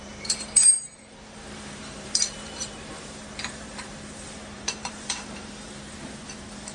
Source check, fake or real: fake